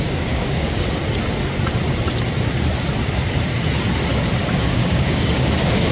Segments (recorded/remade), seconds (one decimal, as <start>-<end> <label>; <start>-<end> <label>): 0.0-1.0 remade; 1.0-4.5 recorded; 4.5-5.9 remade